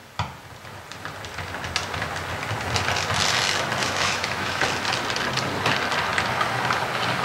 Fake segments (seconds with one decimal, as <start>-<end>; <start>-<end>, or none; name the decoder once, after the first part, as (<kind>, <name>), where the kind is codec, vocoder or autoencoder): 3.8-4.6 (autoencoder, DAC-VAE)